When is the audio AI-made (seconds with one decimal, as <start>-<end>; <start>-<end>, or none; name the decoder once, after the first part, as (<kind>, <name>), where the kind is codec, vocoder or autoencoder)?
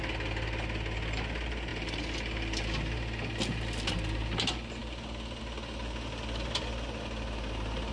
none